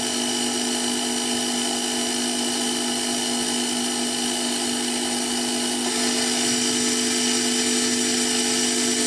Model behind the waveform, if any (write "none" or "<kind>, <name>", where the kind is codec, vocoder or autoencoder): none